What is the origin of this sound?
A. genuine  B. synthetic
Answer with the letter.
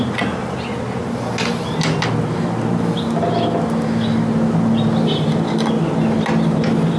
A